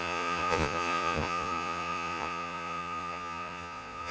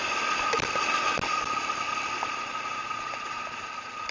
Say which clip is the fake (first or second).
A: first